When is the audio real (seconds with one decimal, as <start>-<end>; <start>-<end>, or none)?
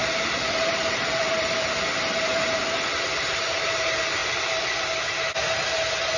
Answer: 3.7-4.2; 4.8-6.2